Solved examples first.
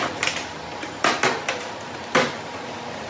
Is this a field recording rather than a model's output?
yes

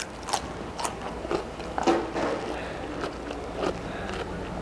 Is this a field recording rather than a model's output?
yes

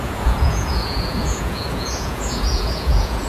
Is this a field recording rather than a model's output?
no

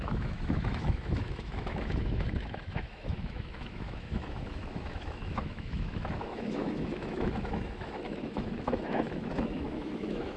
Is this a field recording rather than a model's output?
no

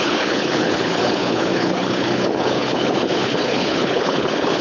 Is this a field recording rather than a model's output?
no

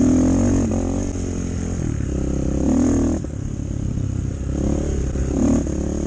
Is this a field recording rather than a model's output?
no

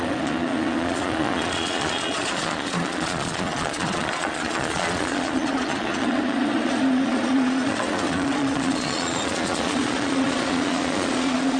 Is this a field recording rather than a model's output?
no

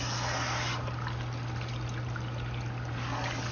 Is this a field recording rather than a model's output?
yes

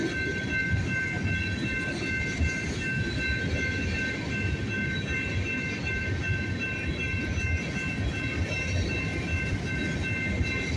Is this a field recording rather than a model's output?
yes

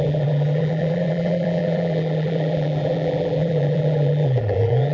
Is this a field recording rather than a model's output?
no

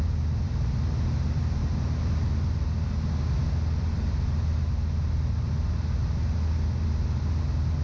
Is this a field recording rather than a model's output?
yes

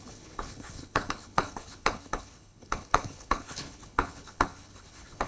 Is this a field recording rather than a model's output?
no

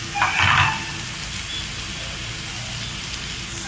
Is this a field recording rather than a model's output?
yes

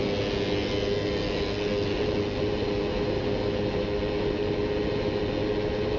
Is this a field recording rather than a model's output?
yes